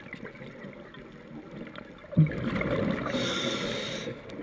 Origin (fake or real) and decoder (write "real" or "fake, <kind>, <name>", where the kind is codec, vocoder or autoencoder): real